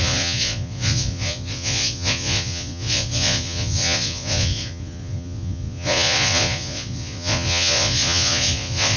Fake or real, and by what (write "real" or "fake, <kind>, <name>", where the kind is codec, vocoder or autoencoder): fake, vocoder, Vocos